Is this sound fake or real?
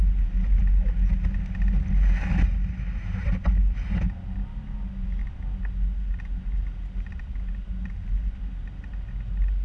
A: real